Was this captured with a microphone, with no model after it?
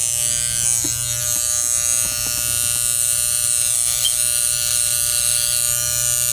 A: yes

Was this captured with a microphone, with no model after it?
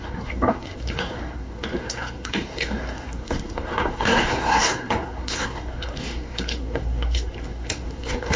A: no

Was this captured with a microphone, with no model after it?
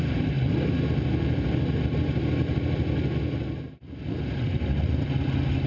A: yes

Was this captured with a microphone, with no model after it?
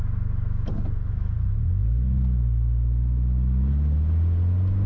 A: yes